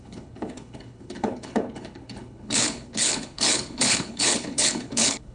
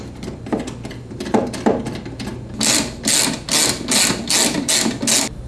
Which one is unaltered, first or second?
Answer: second